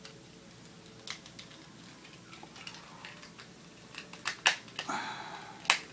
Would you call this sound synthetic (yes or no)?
no